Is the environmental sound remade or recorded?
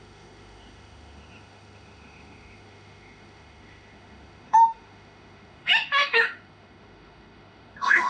remade